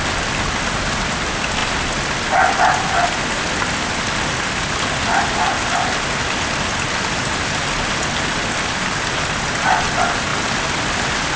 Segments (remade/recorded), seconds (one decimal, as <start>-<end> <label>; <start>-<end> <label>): 0.0-11.4 recorded